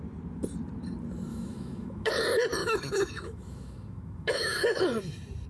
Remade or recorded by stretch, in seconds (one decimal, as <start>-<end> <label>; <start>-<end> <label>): 0.0-1.3 recorded; 1.3-2.1 remade; 2.1-2.6 recorded; 2.6-4.8 remade; 4.8-5.5 recorded